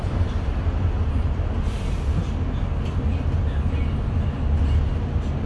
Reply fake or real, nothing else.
real